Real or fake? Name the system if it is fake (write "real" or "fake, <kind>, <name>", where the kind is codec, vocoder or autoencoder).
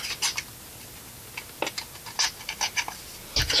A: real